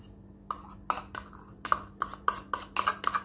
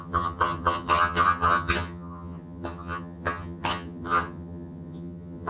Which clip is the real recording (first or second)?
first